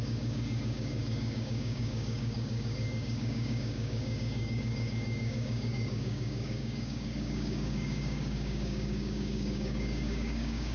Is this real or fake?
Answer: fake